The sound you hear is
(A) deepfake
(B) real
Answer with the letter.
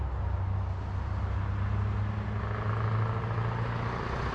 B